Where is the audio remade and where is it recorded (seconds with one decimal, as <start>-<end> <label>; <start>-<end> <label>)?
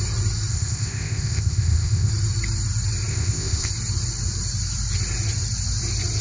0.0-0.5 recorded; 0.5-2.1 remade; 2.1-3.1 recorded; 3.1-3.7 remade; 3.7-6.2 recorded